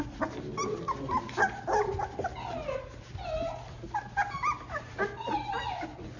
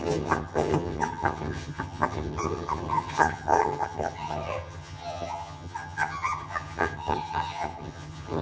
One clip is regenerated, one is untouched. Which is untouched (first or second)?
first